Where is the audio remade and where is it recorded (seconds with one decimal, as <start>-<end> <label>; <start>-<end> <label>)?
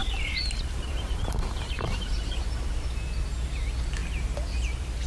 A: 0.0-2.4 remade; 2.4-5.1 recorded